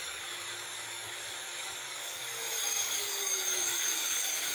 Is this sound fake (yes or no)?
yes